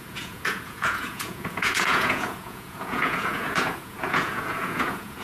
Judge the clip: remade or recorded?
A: remade